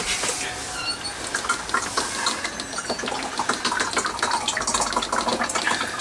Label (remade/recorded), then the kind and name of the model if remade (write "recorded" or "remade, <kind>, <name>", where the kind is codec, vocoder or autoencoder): recorded